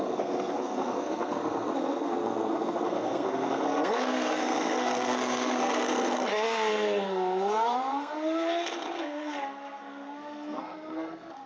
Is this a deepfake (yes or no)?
yes